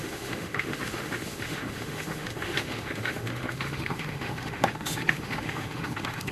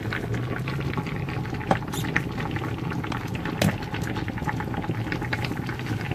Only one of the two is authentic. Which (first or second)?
second